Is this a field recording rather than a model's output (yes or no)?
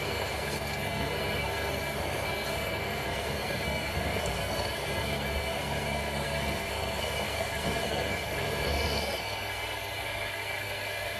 no